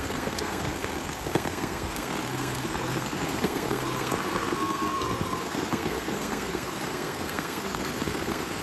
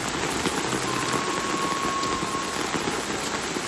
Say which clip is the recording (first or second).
second